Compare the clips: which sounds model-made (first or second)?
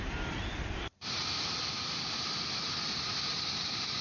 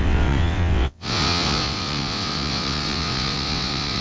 second